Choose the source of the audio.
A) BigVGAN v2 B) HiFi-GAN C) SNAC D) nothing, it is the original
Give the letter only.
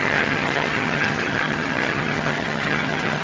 B